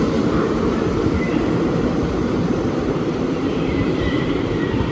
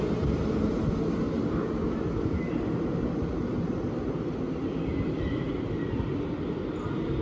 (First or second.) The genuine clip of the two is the second